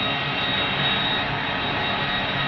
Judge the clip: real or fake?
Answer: real